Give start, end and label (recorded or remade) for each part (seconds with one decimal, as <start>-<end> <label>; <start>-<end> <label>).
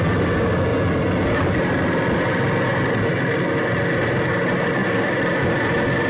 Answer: 0.0-0.7 recorded; 0.7-1.6 remade; 1.6-6.1 recorded